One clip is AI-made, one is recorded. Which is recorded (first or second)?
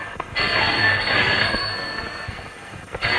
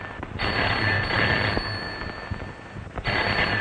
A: second